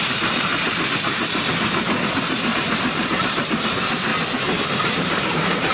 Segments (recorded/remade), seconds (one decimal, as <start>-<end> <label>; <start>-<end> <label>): 0.0-0.5 remade; 0.5-3.2 recorded; 3.2-4.1 remade; 4.1-4.6 recorded; 4.6-5.7 remade